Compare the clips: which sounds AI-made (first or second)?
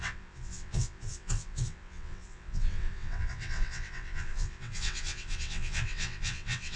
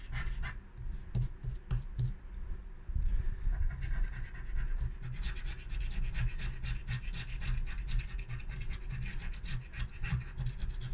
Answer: first